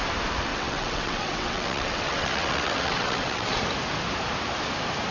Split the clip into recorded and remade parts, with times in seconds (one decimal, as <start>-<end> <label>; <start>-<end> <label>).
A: 0.0-0.5 recorded; 0.5-3.6 remade; 3.6-5.1 recorded